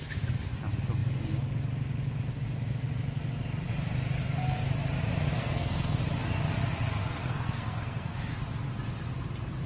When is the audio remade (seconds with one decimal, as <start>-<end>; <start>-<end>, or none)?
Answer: 5.3-6.0; 7.2-8.3